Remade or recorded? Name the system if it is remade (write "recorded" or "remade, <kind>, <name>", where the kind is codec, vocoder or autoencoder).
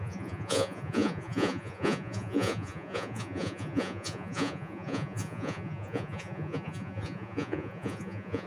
remade, vocoder, Vocos